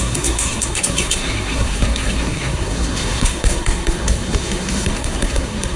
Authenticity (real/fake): fake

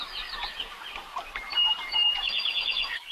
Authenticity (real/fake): real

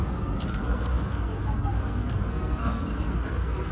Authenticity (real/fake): fake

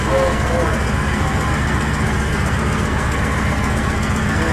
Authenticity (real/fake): fake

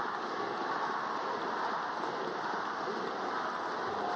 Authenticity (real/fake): real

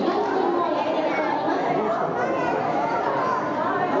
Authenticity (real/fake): real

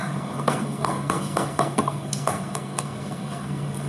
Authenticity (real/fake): fake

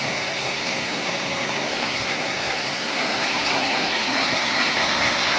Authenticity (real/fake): fake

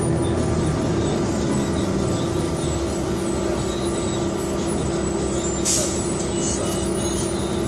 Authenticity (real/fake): real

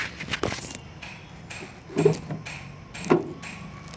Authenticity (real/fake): real